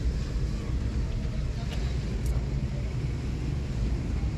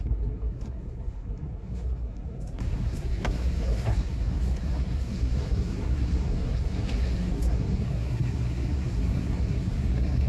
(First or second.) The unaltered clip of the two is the first